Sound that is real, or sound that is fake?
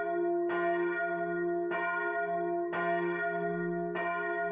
real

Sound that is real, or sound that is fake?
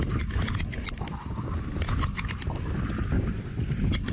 real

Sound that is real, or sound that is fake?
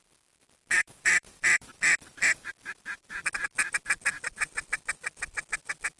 fake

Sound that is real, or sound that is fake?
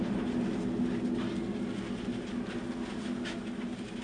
real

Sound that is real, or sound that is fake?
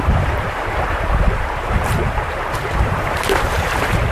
fake